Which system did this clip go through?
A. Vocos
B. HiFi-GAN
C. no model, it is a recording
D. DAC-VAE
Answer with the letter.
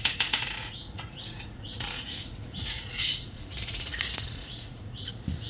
A